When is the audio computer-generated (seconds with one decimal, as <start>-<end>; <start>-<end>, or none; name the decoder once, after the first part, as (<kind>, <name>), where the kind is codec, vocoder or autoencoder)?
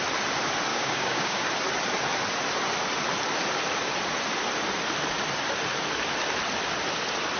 0.7-1.5 (codec, DAC)